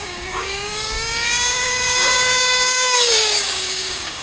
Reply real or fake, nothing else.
fake